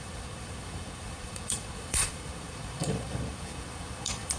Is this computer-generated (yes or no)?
yes